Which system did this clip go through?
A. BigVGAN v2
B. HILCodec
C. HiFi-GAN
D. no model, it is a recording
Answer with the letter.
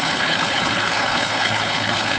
B